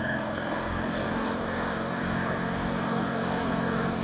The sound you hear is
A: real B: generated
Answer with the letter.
B